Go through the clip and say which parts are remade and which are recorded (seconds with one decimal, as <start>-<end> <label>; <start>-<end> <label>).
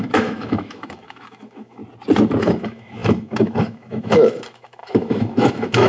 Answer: 0.0-1.8 remade; 1.8-2.4 recorded; 2.4-5.9 remade